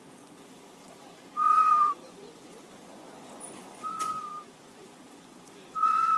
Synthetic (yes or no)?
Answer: yes